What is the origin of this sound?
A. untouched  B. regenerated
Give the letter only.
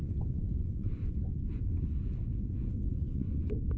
B